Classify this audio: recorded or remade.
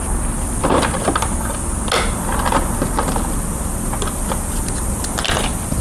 recorded